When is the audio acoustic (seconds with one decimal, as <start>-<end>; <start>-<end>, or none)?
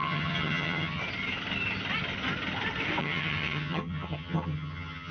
1.0-3.0